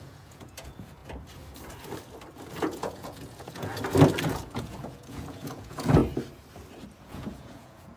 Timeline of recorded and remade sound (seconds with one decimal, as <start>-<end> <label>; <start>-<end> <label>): 0.0-1.0 remade; 1.0-2.6 recorded; 2.6-3.7 remade; 3.7-4.3 recorded; 4.3-6.0 remade; 6.0-7.0 recorded; 7.0-8.0 remade